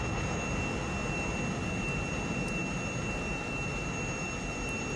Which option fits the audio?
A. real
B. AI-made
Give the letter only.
A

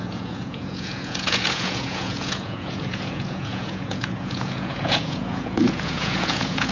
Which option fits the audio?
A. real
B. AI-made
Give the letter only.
B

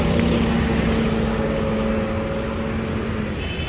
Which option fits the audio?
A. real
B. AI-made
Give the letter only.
A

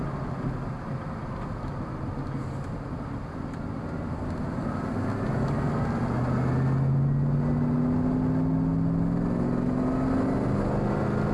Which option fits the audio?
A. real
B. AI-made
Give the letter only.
A